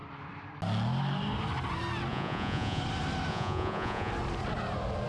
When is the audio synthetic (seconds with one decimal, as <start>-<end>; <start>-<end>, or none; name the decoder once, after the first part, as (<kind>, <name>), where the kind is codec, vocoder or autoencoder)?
2.1-2.8 (vocoder, Vocos); 3.3-4.1